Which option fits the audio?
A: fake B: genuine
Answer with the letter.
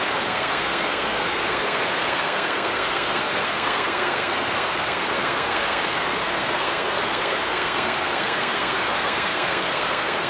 A